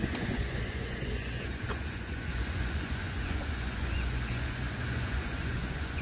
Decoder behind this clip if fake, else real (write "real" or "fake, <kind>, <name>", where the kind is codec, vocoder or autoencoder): fake, vocoder, Vocos